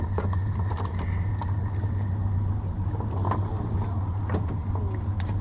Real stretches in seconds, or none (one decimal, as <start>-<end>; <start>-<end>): 0.0-5.4